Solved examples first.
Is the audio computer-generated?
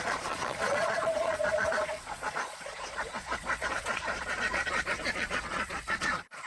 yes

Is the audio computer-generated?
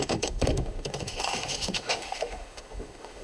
yes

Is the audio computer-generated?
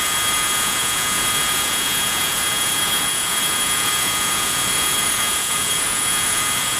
yes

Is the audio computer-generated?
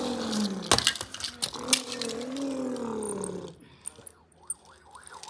no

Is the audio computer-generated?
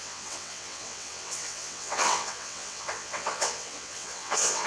yes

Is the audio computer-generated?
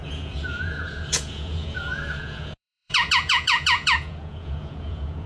yes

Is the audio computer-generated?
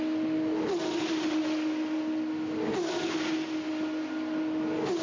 no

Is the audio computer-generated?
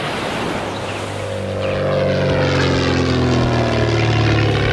no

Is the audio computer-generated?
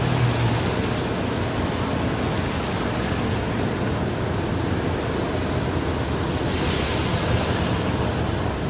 no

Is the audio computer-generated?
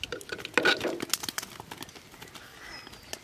no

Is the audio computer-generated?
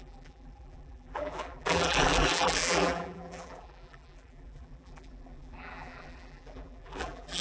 yes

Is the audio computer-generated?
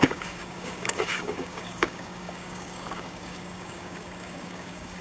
yes